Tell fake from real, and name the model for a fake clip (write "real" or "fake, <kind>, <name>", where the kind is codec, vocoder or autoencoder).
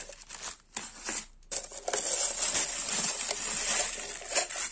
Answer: real